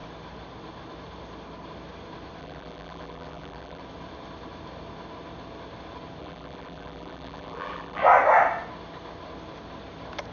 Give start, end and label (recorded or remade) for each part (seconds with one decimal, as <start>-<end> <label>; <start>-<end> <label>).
0.0-2.4 recorded; 2.4-3.8 remade; 3.8-6.2 recorded; 6.2-8.0 remade; 8.0-10.3 recorded